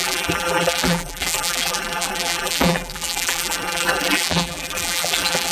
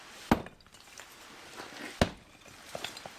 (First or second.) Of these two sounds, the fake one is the first